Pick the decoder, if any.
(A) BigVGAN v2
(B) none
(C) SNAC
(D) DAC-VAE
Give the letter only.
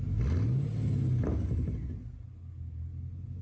B